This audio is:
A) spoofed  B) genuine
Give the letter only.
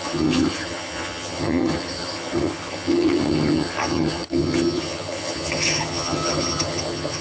A